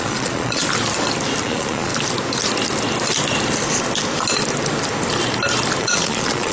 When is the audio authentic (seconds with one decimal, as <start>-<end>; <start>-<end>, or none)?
0.6-1.4; 1.9-5.8